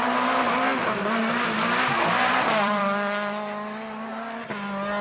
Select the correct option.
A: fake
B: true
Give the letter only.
A